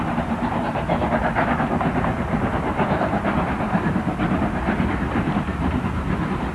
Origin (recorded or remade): recorded